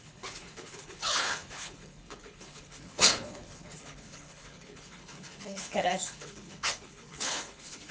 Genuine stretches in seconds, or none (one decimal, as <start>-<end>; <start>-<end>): none